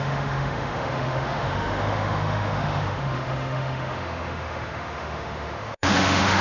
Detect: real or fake fake